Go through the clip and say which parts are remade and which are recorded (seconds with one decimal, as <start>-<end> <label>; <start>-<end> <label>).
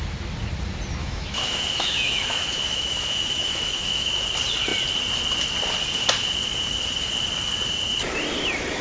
0.0-1.0 recorded; 1.0-4.2 remade; 4.2-8.8 recorded